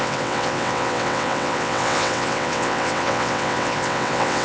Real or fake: fake